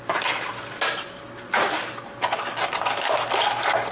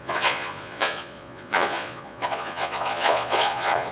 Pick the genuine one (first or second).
first